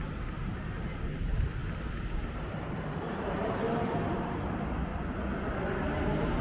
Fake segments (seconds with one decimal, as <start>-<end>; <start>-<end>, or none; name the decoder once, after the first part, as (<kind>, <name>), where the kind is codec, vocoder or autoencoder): 0.0-1.6 (vocoder, BigVGAN v2); 2.1-4.9; 5.9-6.4